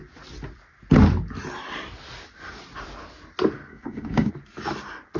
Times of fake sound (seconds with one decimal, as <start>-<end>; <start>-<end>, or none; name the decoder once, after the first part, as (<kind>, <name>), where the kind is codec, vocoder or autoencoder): 3.7-4.3 (codec, DAC)